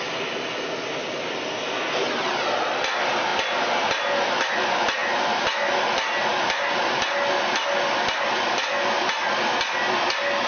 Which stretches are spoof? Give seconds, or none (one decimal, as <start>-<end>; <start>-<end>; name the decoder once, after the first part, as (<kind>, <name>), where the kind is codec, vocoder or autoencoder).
none